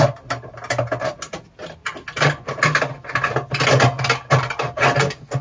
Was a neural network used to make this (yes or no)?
no